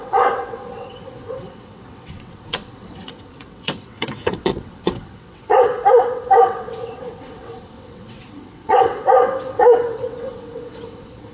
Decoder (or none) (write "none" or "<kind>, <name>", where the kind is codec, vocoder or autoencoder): vocoder, WaveNeXt